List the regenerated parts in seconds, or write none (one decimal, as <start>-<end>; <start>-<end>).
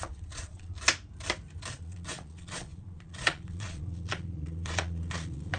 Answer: 0.0-0.7; 1.7-5.6